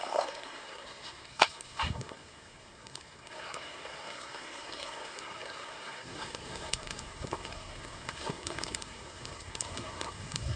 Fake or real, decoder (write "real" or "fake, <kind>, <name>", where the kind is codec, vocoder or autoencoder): fake, codec, SNAC